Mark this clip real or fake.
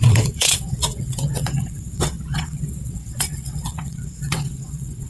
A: fake